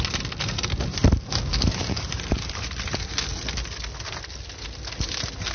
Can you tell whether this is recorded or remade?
recorded